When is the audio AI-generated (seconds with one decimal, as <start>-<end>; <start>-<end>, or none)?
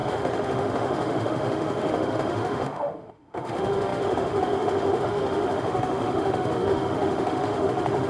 0.0-8.1